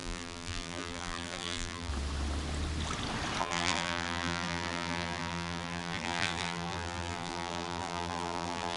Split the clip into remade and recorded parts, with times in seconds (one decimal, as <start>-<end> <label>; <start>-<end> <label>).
0.0-1.9 remade; 1.9-3.4 recorded; 3.4-8.8 remade